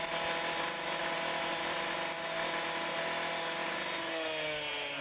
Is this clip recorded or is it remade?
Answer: recorded